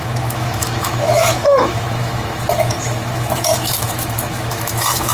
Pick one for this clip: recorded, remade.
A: remade